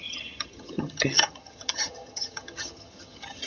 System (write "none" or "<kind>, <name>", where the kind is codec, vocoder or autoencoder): vocoder, HiFi-GAN